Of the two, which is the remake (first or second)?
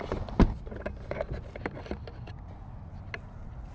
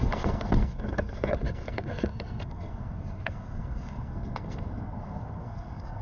second